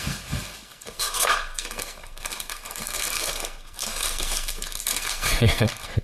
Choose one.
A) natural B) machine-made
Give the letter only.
B